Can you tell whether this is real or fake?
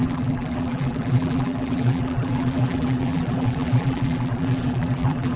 fake